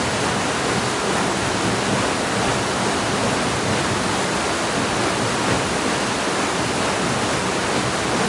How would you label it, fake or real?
real